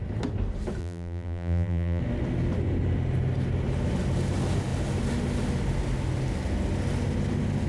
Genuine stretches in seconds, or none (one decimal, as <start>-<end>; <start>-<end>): 0.0-0.8; 2.0-7.7